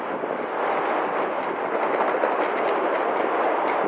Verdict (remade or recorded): recorded